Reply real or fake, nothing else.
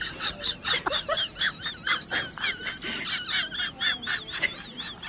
real